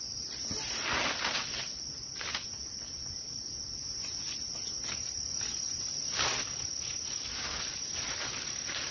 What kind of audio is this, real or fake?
real